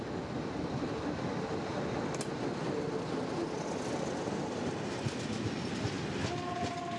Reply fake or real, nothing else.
real